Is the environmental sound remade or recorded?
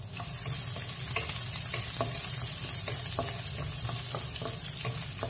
recorded